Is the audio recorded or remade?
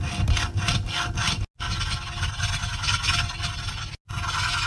recorded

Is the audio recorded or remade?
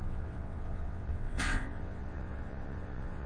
remade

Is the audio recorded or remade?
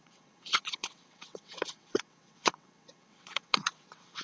remade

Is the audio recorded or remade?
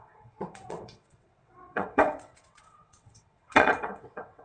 remade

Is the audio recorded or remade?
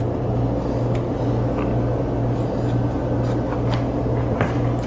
recorded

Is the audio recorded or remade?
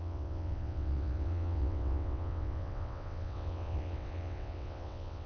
remade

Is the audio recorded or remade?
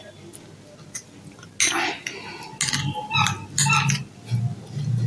recorded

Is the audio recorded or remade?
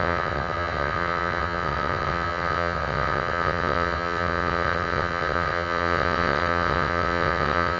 remade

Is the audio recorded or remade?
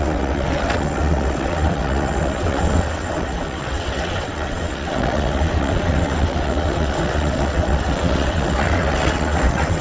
remade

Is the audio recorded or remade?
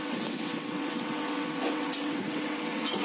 remade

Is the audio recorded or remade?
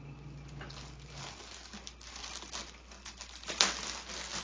recorded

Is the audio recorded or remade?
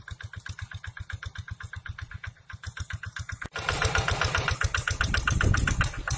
recorded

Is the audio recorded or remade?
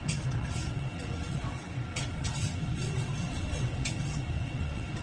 remade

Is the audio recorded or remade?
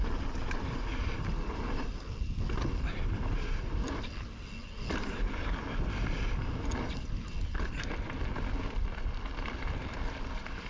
recorded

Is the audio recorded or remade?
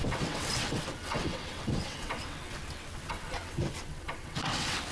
remade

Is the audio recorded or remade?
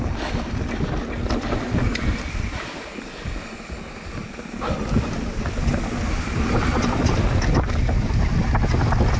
recorded